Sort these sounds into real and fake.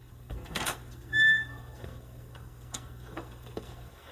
fake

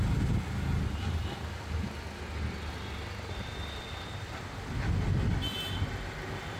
real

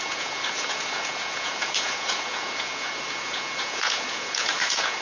fake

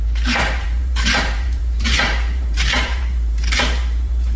fake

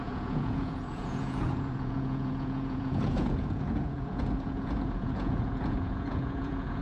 fake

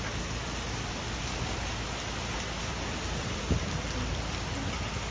real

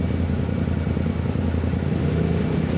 real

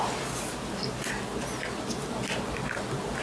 real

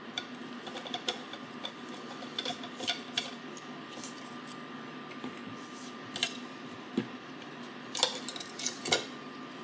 real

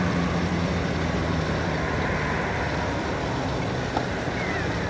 real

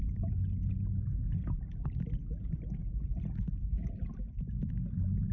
real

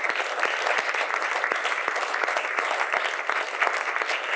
real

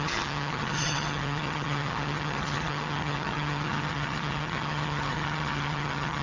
fake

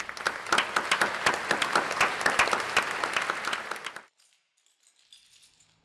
real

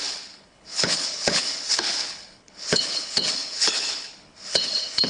fake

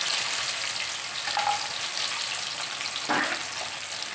real